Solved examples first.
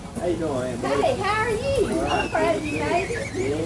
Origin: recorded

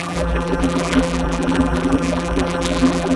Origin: remade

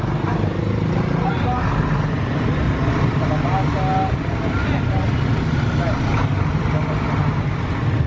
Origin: recorded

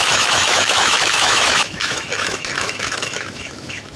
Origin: remade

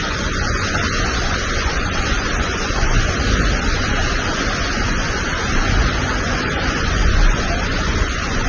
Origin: remade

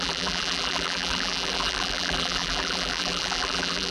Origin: remade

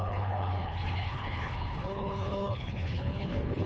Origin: remade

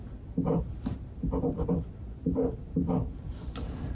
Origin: recorded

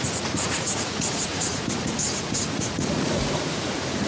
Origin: remade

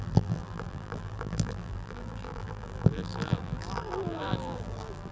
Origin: remade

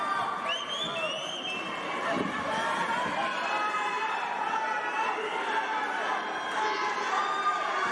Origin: recorded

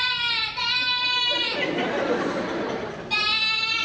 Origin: recorded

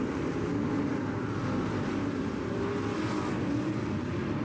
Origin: recorded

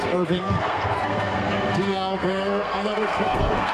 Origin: remade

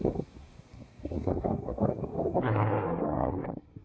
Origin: remade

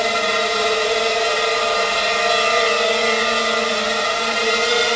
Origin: remade